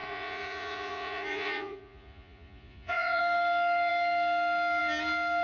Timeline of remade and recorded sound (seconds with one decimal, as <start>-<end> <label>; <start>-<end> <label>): 0.0-3.2 remade; 3.2-5.4 recorded